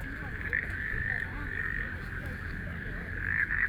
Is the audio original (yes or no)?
no